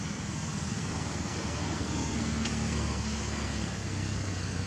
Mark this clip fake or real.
fake